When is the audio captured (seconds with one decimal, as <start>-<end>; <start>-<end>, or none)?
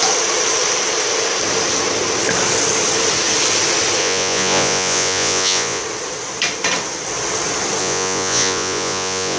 0.0-4.0; 5.8-7.8